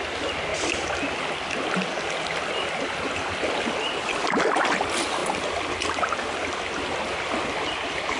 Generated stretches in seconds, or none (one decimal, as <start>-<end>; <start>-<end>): none